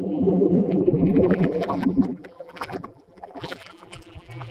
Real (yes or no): no